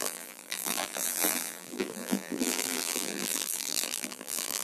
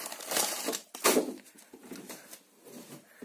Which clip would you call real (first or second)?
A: second